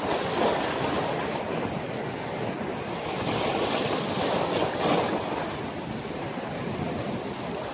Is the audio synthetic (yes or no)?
no